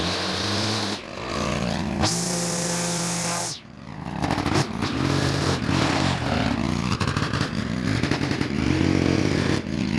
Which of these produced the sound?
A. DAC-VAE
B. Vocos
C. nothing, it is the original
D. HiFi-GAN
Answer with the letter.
C